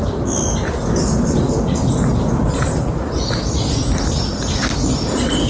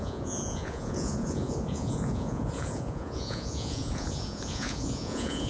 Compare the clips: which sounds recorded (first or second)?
first